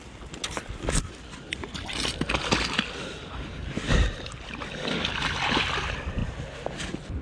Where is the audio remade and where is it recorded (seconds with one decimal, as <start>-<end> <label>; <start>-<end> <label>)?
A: 0.0-7.2 recorded